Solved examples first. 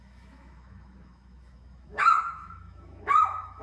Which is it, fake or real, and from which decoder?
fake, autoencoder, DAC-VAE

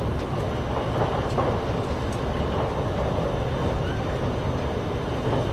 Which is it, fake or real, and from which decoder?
real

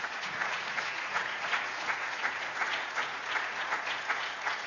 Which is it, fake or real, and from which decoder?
fake, vocoder, Vocos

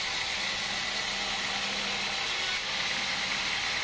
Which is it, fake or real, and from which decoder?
real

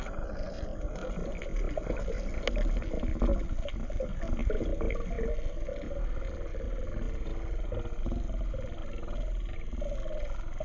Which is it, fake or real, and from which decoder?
real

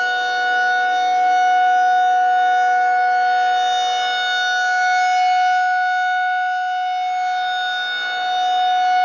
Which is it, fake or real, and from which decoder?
real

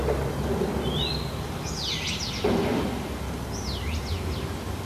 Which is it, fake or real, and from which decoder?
real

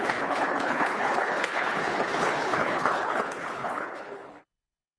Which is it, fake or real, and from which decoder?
fake, codec, HILCodec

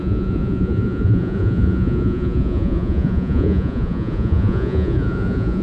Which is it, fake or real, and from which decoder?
fake, vocoder, Vocos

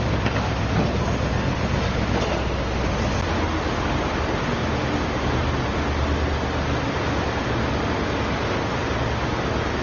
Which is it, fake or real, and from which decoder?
real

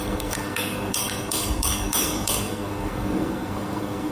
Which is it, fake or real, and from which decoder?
fake, codec, SNAC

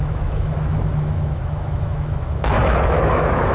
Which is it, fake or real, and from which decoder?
fake, autoencoder, DAC-VAE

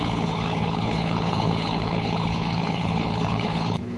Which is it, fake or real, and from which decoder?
fake, codec, HILCodec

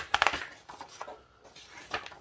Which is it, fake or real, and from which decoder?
real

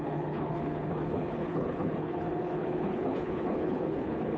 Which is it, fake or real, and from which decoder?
fake, codec, HILCodec